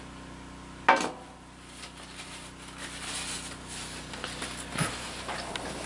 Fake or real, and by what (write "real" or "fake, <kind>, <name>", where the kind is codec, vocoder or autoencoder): real